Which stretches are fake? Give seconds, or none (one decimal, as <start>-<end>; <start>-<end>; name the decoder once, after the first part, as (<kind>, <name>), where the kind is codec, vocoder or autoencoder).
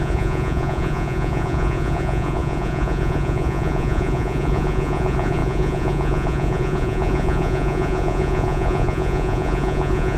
0.0-10.2 (vocoder, Vocos)